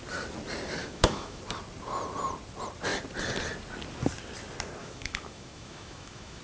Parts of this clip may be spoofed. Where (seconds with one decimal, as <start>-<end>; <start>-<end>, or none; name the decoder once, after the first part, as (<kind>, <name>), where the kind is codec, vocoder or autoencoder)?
0.8-1.4 (autoencoder, DAC-VAE); 4.8-6.4